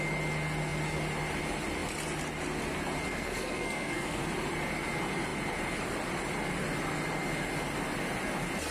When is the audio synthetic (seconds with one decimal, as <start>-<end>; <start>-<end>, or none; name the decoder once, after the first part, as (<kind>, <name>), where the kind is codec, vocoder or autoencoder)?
3.1-4.2 (codec, SNAC)